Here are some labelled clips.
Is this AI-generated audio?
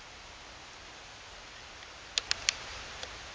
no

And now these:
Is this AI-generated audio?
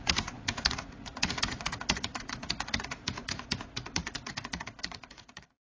yes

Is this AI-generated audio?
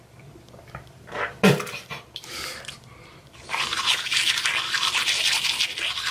yes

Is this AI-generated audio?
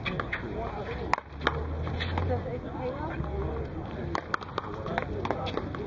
no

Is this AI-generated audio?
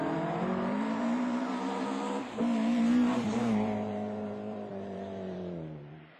yes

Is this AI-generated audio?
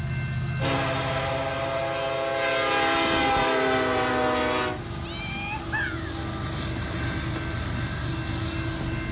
no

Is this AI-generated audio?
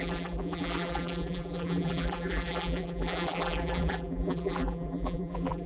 yes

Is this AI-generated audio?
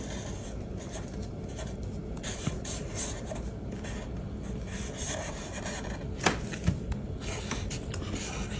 no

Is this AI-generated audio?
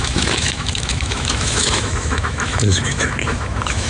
yes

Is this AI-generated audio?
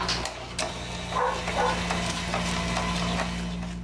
no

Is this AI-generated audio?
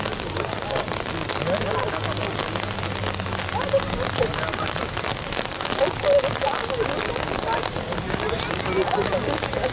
no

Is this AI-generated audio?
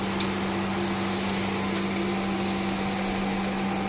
no